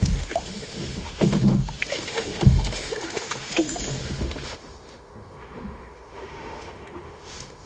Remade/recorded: remade